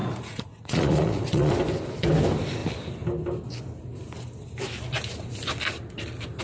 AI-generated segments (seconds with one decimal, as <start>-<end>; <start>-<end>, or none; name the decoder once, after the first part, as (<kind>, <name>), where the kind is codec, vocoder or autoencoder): 0.0-1.5 (vocoder, Vocos)